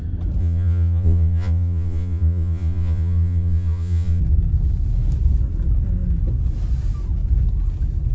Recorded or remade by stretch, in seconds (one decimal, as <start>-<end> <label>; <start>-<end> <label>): 0.0-0.4 recorded; 0.4-4.2 remade; 4.2-8.1 recorded